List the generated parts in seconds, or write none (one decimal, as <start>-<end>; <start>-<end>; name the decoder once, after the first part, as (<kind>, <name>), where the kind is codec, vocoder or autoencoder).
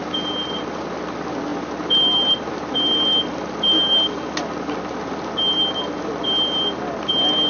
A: none